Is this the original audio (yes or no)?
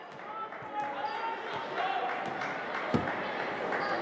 yes